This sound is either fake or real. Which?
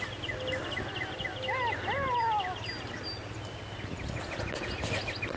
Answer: real